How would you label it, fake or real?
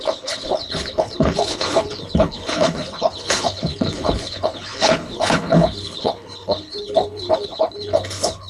fake